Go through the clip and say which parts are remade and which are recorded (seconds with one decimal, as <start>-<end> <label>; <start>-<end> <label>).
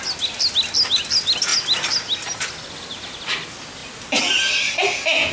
0.0-5.3 recorded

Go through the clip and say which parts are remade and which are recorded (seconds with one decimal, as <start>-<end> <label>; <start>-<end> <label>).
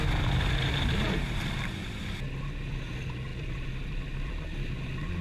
0.0-1.2 recorded; 1.2-2.0 remade; 2.0-3.3 recorded; 3.3-4.7 remade; 4.7-5.2 recorded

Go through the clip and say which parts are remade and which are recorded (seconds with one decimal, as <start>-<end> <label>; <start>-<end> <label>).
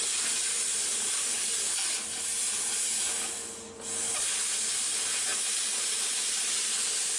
0.0-7.2 recorded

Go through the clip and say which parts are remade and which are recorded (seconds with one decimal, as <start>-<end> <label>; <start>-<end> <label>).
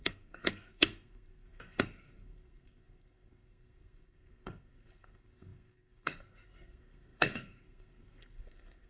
0.0-8.9 remade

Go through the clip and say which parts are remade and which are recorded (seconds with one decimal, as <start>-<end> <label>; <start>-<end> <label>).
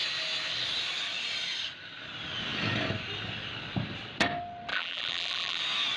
0.0-4.7 recorded; 4.7-5.6 remade; 5.6-6.0 recorded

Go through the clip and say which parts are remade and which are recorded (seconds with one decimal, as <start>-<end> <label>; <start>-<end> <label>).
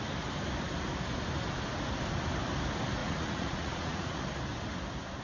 0.0-3.0 recorded; 3.0-4.2 remade; 4.2-5.2 recorded